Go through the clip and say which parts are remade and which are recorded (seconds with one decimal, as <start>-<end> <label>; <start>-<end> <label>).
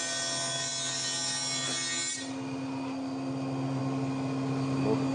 0.0-5.1 recorded